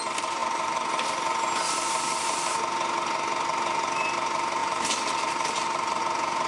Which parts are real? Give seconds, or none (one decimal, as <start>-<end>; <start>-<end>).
0.0-0.4; 1.0-4.6; 6.0-6.5